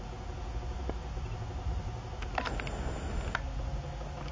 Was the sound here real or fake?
real